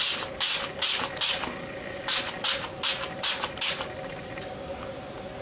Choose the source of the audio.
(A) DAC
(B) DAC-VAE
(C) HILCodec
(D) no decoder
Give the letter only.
D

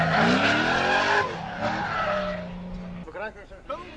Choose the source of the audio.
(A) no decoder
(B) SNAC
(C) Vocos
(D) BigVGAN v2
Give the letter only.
A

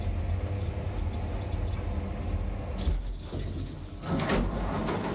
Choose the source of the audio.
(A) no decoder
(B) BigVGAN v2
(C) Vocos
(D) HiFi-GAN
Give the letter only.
A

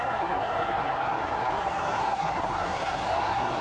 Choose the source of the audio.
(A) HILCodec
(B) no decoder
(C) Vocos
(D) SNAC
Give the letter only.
D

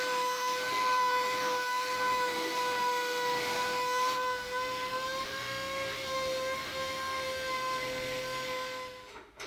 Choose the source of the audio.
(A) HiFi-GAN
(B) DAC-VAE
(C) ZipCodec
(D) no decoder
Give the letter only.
B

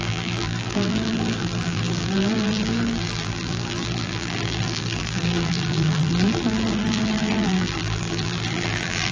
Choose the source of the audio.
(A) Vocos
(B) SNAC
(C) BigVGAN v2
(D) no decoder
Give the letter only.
C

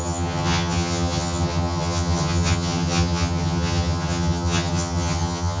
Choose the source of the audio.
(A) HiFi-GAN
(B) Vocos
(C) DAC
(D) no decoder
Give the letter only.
A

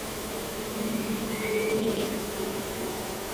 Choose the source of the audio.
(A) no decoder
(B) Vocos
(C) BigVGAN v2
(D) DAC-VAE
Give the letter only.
D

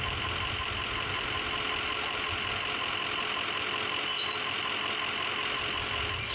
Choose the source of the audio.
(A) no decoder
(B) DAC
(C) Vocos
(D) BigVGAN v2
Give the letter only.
A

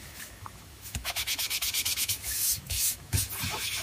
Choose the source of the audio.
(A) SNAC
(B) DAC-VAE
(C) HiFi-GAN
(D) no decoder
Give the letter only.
B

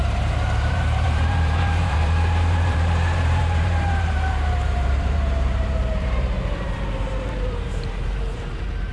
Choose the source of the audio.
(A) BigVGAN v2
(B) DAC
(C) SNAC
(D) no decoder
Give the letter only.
A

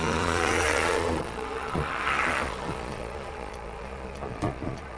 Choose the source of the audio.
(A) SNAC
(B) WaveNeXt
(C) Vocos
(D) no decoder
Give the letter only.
C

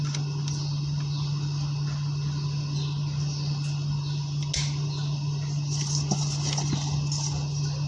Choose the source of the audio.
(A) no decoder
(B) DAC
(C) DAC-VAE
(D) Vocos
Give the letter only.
A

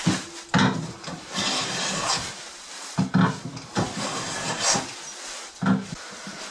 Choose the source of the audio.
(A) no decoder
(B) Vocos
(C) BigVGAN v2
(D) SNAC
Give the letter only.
A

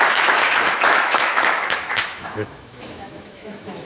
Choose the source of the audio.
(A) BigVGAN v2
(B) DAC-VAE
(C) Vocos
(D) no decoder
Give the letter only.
B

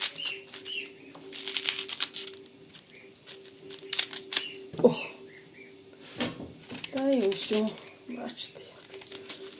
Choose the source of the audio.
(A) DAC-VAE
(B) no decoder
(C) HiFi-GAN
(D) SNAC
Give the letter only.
B